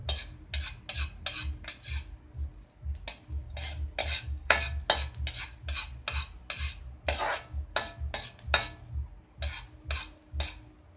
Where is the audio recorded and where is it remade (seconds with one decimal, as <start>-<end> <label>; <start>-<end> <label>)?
0.0-4.0 recorded; 4.0-4.6 remade; 4.6-11.0 recorded